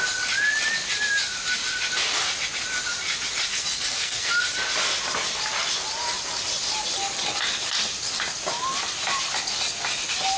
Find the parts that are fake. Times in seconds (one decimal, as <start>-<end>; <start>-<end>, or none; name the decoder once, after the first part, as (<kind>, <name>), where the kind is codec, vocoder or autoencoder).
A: 3.5-4.3 (codec, SNAC)